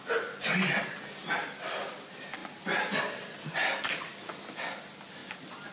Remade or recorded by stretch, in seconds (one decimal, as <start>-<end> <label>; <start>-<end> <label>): 0.0-5.7 recorded